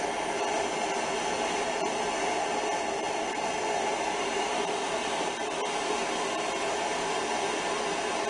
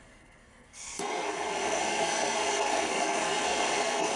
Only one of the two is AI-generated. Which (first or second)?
second